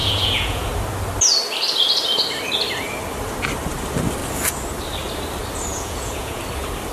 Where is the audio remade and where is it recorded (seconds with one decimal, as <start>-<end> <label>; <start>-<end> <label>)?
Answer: 0.0-0.7 remade; 0.7-5.7 recorded; 5.7-6.4 remade; 6.4-6.9 recorded